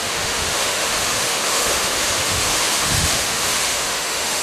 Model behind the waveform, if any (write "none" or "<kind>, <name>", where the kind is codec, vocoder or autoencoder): autoencoder, DAC-VAE